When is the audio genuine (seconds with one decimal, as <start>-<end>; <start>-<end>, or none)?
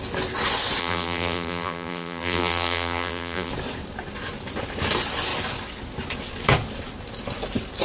0.0-0.8; 3.5-7.8